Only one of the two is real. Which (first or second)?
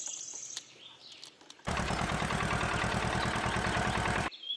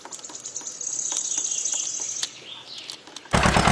second